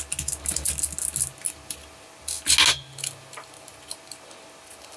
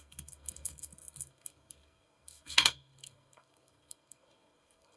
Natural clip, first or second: first